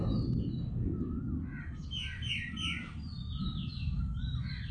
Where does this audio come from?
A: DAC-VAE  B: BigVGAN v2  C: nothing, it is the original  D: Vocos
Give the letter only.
C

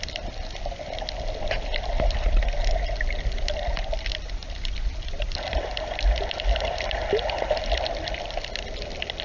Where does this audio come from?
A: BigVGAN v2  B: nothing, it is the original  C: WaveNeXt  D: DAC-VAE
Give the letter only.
B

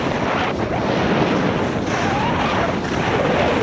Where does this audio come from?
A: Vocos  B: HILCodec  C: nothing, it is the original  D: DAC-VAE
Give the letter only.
C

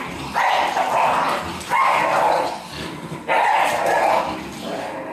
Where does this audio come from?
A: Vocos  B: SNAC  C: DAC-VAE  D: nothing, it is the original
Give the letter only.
D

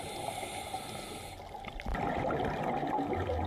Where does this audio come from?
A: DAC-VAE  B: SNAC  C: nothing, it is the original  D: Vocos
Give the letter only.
C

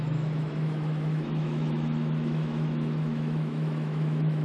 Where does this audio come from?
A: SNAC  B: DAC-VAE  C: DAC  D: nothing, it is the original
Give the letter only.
B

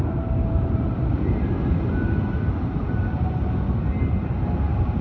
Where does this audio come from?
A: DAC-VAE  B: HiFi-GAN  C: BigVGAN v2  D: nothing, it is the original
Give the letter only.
D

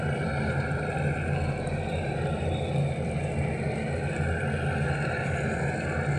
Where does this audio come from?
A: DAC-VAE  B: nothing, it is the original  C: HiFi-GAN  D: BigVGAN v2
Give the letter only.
B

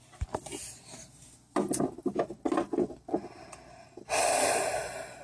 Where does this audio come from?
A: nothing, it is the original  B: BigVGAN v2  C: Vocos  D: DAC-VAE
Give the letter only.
A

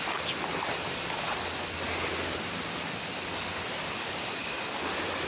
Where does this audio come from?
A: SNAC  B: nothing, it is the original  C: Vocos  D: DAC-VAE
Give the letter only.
B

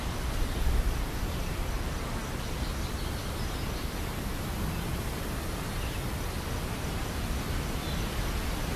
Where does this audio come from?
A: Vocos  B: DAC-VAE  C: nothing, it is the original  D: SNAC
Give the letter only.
C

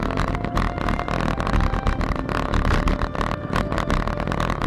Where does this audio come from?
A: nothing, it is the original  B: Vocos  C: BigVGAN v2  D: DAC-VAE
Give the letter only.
A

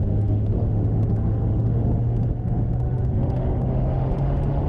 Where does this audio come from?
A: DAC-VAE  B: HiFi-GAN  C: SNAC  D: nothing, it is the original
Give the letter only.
A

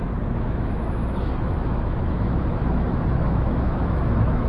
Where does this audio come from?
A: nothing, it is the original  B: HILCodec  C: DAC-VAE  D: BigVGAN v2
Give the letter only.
C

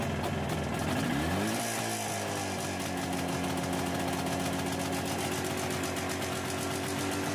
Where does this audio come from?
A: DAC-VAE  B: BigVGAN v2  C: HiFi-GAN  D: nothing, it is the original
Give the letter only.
D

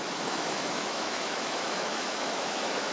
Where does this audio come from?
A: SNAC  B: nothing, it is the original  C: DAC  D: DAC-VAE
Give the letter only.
D